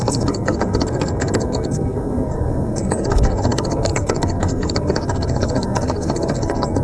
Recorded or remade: remade